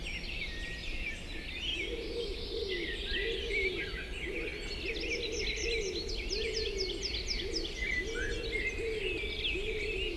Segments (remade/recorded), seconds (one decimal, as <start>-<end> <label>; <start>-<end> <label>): 0.0-10.2 recorded